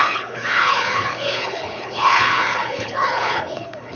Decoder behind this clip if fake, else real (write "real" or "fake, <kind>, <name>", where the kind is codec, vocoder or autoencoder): fake, codec, HILCodec